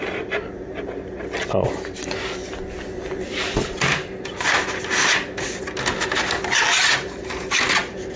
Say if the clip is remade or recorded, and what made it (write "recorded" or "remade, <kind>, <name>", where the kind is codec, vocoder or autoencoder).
recorded